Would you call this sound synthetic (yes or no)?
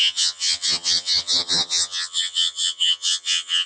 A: yes